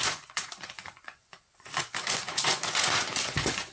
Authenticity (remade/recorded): remade